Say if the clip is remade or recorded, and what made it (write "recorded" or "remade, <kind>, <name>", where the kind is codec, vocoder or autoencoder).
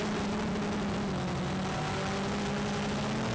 recorded